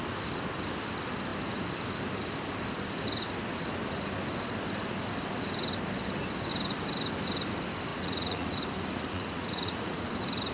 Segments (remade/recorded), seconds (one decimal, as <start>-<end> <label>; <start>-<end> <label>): 0.0-7.9 recorded; 7.9-8.6 remade; 8.6-9.1 recorded; 9.1-10.1 remade; 10.1-10.5 recorded